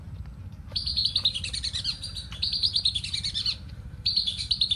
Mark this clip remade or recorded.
recorded